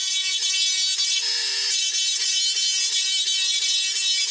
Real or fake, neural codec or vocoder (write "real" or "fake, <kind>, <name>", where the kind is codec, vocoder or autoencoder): real